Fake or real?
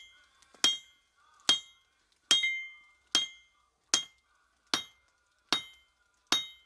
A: real